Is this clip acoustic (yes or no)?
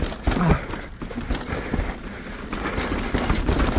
yes